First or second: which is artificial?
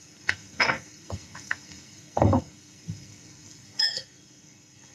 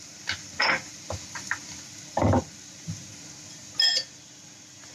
first